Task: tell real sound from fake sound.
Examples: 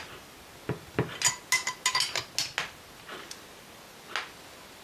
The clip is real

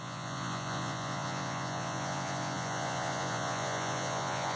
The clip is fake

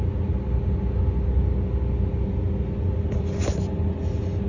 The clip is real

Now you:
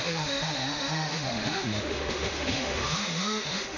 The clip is fake